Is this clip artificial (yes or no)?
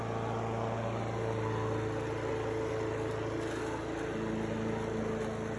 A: no